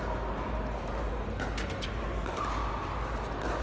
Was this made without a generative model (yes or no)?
yes